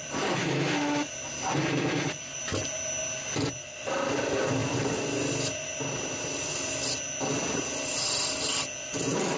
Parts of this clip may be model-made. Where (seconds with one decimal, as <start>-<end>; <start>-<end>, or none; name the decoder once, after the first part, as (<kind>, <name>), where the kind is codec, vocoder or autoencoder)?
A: 0.4-1.1 (autoencoder, DAC-VAE)